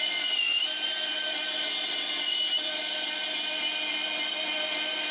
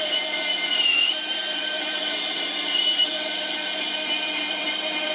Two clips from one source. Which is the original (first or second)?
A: first